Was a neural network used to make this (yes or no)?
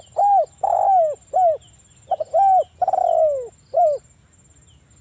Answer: no